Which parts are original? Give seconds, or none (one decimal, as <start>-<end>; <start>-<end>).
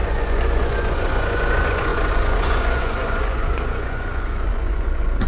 none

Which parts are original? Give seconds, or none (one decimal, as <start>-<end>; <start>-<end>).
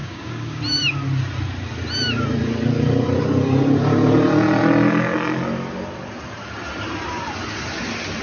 0.6-8.2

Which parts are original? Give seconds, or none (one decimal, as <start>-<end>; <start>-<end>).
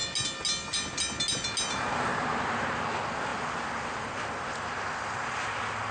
0.0-5.9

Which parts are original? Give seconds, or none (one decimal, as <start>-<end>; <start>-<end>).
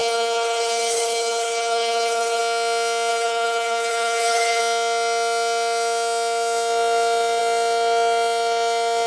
2.4-3.1; 4.6-9.1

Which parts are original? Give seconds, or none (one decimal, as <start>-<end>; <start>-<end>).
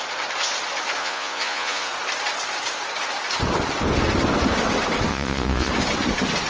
0.0-1.0; 1.9-5.1; 5.7-6.5